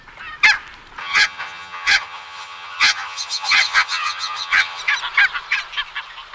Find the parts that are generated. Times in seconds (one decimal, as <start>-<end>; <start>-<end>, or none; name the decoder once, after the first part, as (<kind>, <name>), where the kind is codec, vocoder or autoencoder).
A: 1.0-4.8 (vocoder, HiFi-GAN)